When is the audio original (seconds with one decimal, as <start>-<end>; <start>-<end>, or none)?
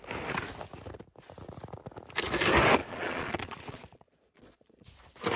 0.0-2.8; 4.9-5.4